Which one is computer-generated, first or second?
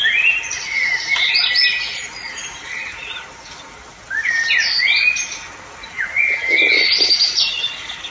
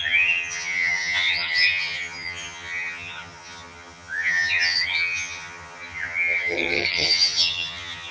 second